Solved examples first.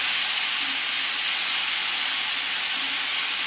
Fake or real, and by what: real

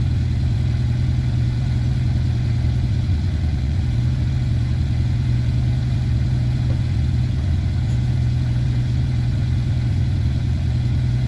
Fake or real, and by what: fake, vocoder, Vocos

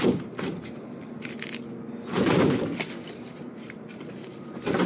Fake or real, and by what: real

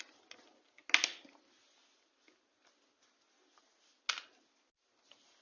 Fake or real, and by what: real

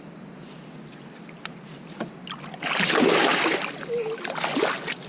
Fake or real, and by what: real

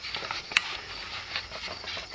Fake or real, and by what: real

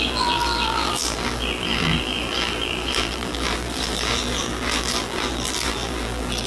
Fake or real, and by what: fake, vocoder, BigVGAN v2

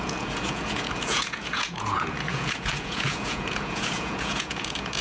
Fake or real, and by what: fake, vocoder, Vocos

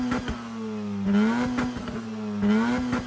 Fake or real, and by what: real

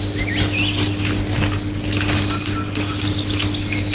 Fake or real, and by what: real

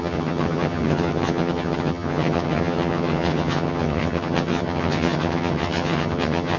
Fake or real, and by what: fake, vocoder, HiFi-GAN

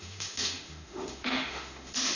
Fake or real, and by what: fake, autoencoder, DAC-VAE